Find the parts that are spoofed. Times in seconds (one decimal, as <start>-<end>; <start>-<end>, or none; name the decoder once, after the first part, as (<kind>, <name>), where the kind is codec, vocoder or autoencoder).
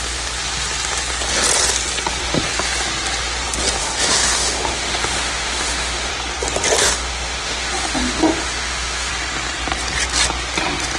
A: 3.8-6.1 (autoencoder, DAC-VAE); 6.8-9.1